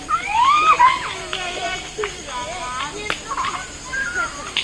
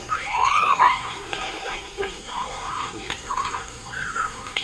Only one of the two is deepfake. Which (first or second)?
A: second